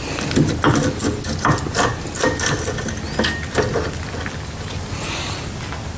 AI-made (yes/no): no